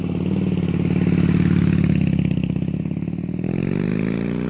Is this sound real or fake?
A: real